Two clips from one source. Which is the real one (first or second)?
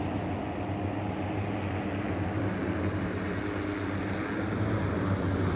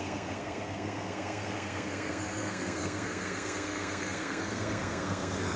first